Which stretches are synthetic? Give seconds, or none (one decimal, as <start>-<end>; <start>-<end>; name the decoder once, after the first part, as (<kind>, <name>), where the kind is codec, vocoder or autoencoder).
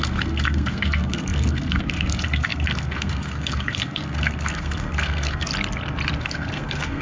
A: 0.0-5.5 (codec, SNAC); 6.2-7.0